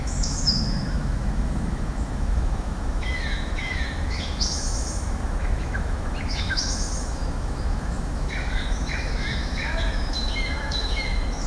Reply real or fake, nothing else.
fake